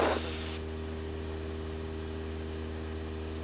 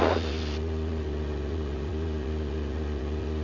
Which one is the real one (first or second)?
first